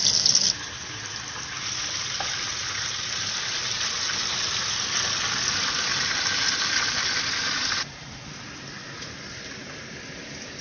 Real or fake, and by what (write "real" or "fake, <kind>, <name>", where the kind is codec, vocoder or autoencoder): real